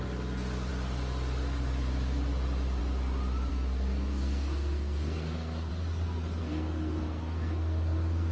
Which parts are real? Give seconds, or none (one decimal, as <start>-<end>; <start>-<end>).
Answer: 0.0-3.5; 5.7-6.4